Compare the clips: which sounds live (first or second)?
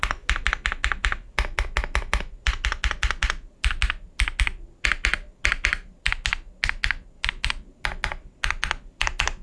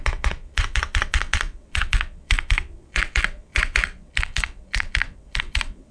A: first